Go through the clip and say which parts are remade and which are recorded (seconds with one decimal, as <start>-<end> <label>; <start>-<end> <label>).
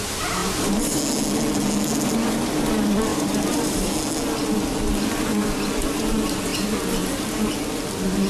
0.0-0.4 recorded; 0.4-1.0 remade; 1.0-3.1 recorded; 3.1-3.9 remade; 3.9-8.3 recorded